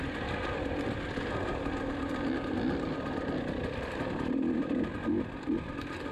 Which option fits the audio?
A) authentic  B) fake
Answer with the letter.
A